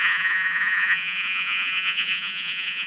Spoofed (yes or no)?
yes